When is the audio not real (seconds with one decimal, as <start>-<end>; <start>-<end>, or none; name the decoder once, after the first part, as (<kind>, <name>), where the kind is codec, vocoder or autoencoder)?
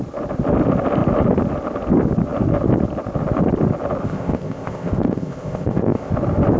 4.0-6.1 (codec, ZipCodec)